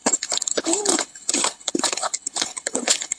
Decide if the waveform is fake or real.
fake